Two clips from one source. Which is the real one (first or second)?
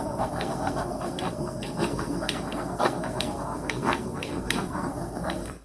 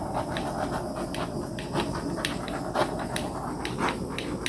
second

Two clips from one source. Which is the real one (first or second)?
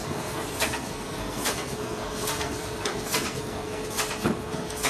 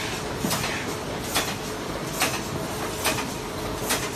second